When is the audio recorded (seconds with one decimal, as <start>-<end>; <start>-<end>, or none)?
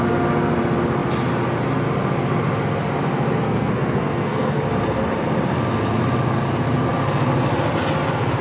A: 0.0-3.4; 4.6-8.4